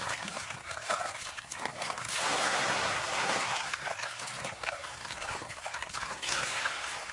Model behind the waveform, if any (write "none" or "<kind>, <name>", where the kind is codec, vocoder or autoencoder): codec, SNAC